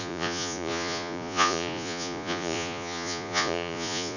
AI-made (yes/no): yes